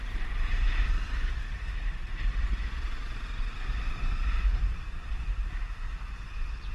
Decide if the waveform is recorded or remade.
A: remade